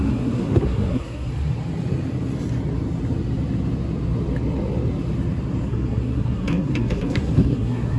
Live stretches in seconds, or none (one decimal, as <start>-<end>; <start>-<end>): 1.3-5.7